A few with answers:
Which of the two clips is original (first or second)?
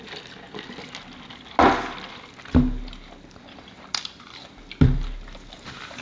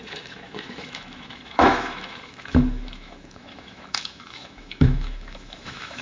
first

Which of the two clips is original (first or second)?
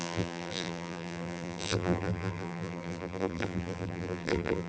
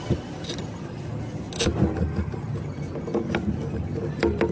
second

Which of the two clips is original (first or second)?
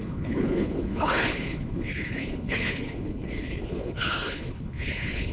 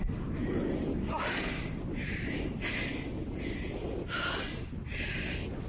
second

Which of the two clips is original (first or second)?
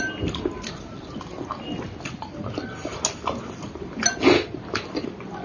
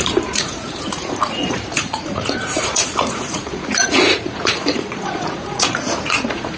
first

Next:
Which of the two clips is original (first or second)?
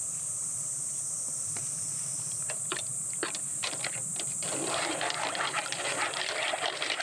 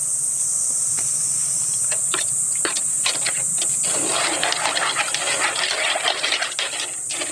second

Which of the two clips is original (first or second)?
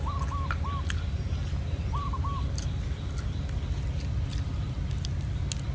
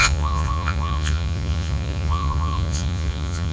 first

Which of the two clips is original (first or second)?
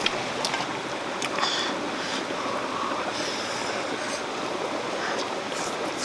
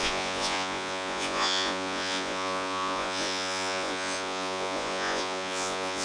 first